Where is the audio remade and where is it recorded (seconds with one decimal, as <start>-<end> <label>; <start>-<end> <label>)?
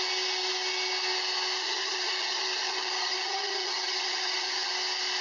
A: 0.0-1.6 recorded; 1.6-4.7 remade; 4.7-5.2 recorded